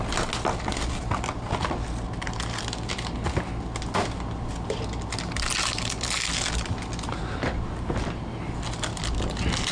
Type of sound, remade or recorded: recorded